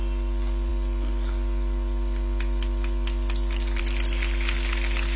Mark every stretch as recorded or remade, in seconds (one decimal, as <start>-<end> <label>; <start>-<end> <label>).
0.0-5.2 recorded

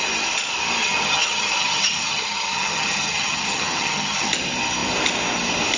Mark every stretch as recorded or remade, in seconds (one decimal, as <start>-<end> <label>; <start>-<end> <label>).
0.0-0.8 recorded; 0.8-4.3 remade; 4.3-5.8 recorded